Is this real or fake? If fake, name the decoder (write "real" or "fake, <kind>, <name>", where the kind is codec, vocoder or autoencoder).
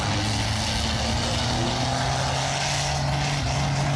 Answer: real